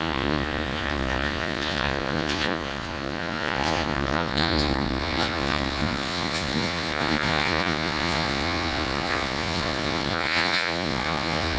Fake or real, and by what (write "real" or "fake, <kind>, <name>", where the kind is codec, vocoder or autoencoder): fake, vocoder, Vocos